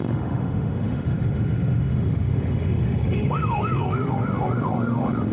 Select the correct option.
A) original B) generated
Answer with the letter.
B